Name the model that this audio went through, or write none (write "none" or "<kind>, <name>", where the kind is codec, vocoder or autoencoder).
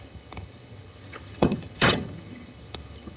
vocoder, HiFi-GAN